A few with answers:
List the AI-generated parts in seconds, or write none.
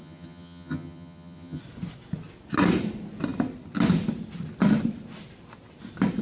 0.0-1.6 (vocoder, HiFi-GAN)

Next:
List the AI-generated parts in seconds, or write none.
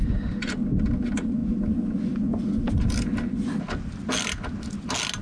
none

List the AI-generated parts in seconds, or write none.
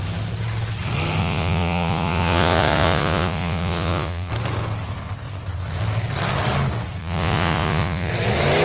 1.2-4.3 (vocoder, Vocos); 7.0-8.1